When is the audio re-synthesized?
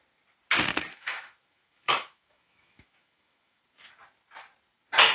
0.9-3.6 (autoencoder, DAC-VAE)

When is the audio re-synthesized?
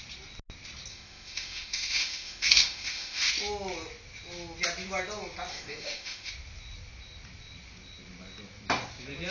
0.9-3.3 (autoencoder, DAC-VAE); 5.5-6.3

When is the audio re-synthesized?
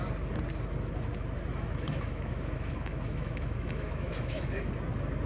1.5-4.7 (autoencoder, DAC-VAE)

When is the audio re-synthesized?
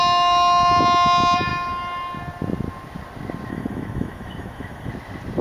3.5-4.9 (autoencoder, DAC-VAE)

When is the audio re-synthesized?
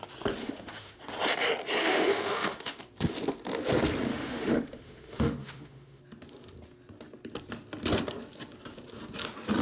0.4-1.0 (autoencoder, DAC-VAE); 1.8-2.8; 4.1-6.0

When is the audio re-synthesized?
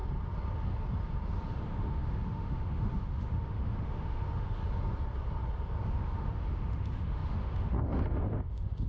1.5-4.6 (autoencoder, DAC-VAE); 5.8-8.9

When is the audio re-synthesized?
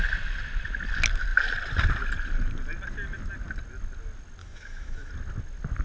4.4-5.1 (autoencoder, DAC-VAE)